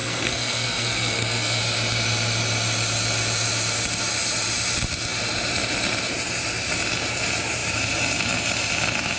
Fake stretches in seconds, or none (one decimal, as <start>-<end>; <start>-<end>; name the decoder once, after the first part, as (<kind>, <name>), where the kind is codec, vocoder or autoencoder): 0.0-1.6 (codec, SNAC)